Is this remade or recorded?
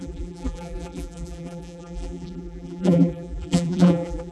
remade